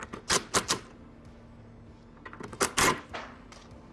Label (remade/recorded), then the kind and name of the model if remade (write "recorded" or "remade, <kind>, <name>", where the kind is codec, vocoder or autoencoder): recorded